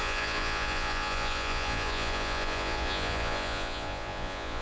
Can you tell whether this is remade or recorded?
remade